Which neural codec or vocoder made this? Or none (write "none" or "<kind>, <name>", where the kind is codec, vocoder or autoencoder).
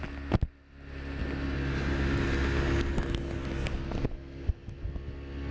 none